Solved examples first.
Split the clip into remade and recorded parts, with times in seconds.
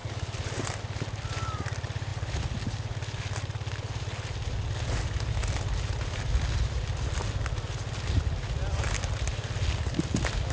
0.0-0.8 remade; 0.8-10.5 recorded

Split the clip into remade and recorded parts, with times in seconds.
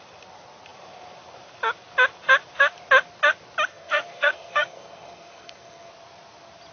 0.0-3.7 recorded; 3.7-5.9 remade; 5.9-6.7 recorded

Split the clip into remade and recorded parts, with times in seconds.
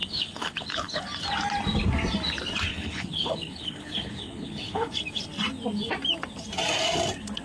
0.0-1.0 remade; 1.0-2.7 recorded; 2.7-4.9 remade; 4.9-7.4 recorded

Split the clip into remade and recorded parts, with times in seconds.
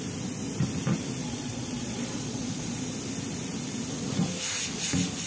0.0-1.2 recorded; 1.2-2.8 remade; 2.8-5.3 recorded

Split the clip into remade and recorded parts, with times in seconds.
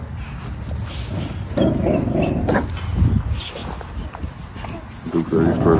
0.0-5.8 recorded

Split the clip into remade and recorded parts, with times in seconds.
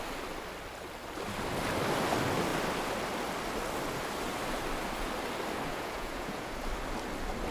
0.0-5.7 recorded; 5.7-6.5 remade; 6.5-7.5 recorded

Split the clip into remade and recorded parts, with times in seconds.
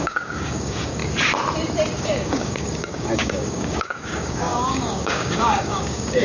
0.0-1.0 remade; 1.0-2.0 recorded; 2.0-6.2 remade